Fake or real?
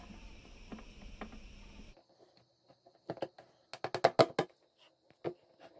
real